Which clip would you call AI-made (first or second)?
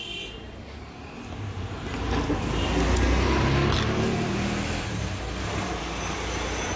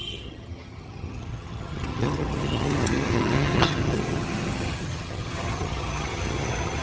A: second